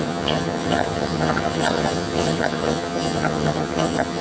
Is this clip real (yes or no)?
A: no